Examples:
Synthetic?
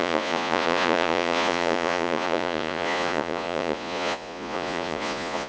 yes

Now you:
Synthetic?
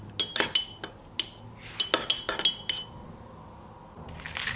no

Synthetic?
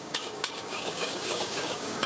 yes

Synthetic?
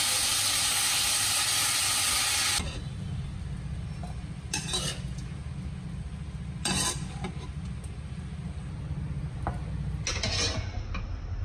no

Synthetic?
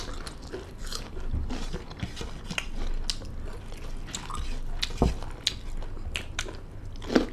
no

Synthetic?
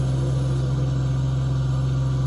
no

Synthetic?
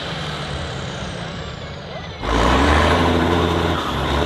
yes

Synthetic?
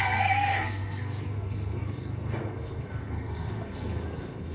yes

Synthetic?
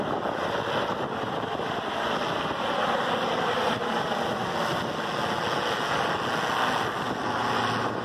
no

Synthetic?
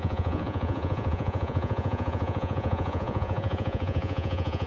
yes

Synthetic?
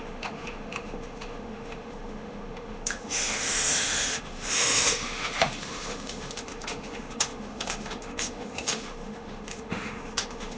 yes